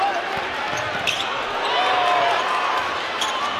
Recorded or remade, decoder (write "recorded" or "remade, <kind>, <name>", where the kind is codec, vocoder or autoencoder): recorded